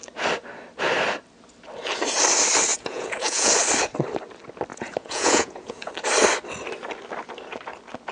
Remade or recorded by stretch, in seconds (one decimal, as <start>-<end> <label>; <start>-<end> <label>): 0.0-2.7 recorded; 2.7-3.5 remade; 3.5-4.7 recorded; 4.7-5.9 remade; 5.9-8.1 recorded